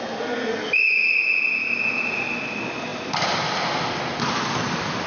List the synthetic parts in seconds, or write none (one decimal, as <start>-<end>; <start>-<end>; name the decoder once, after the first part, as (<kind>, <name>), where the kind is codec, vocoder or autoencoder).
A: none